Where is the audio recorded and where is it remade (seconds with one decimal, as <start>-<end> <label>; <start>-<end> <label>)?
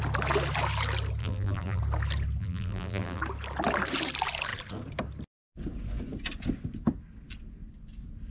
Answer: 0.0-1.2 recorded; 1.2-1.8 remade; 1.8-2.4 recorded; 2.4-3.2 remade; 3.2-8.3 recorded